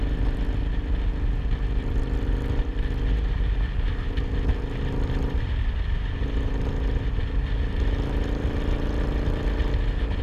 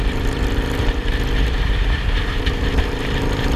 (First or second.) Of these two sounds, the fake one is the second